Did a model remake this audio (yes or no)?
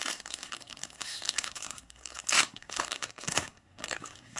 yes